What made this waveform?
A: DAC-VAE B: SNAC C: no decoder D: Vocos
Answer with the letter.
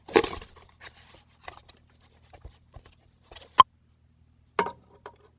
C